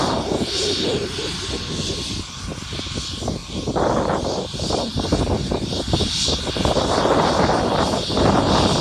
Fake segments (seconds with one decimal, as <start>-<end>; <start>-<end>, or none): none

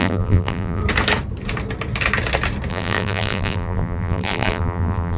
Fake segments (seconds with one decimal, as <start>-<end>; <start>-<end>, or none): 0.0-0.8; 2.7-5.2

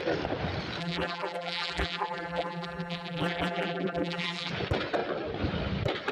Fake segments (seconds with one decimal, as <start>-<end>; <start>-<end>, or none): 0.8-4.5

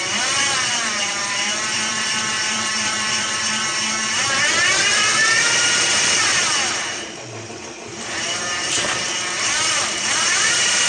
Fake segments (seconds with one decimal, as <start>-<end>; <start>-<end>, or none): 0.0-10.9

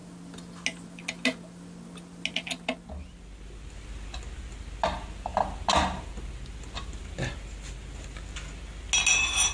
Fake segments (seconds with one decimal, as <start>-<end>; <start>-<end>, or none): none

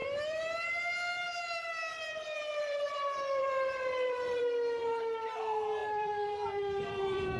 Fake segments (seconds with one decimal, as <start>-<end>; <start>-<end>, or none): 0.0-4.4; 5.8-7.4

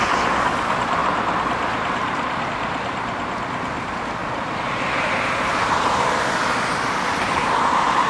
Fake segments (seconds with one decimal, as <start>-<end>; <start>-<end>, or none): 1.0-2.5; 4.2-6.7

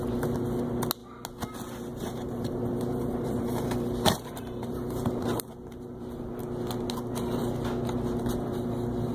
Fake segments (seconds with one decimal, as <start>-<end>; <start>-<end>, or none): 1.9-6.4